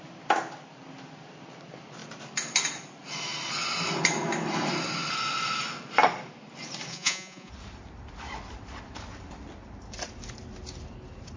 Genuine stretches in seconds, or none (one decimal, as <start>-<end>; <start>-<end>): 0.0-6.9; 7.5-11.4